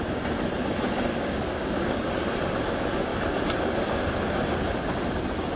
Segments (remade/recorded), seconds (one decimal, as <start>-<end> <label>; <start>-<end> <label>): 0.0-1.1 recorded; 1.1-2.1 remade; 2.1-5.6 recorded